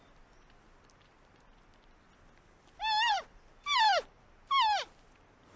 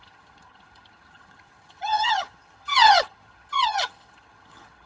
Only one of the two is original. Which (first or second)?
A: first